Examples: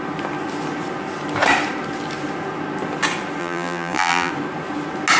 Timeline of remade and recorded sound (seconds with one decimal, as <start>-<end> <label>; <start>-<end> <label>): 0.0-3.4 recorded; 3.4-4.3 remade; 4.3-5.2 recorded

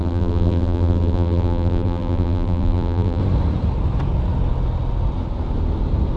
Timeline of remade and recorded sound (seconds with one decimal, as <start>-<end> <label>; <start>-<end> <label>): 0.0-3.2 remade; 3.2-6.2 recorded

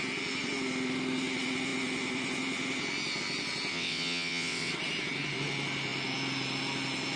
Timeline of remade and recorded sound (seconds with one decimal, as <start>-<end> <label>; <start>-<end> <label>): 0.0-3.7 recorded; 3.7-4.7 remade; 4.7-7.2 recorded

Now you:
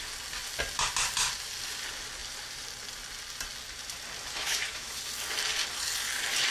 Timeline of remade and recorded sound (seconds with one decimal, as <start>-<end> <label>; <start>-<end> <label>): 0.0-4.3 recorded; 4.3-5.0 remade; 5.0-6.5 recorded

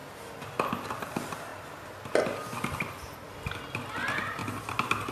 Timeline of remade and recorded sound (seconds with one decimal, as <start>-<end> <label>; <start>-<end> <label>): 0.0-5.1 recorded